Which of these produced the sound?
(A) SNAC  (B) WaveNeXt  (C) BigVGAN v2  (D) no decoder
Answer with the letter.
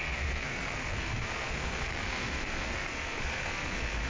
A